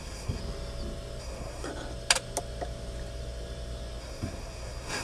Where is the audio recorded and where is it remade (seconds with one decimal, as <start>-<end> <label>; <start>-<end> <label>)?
0.0-0.4 remade; 0.4-1.2 recorded; 1.2-1.7 remade; 1.7-4.0 recorded; 4.0-5.0 remade